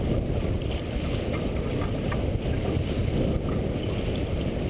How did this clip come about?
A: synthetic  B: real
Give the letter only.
B